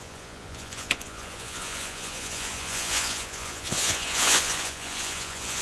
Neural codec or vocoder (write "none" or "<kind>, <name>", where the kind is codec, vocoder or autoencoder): vocoder, Vocos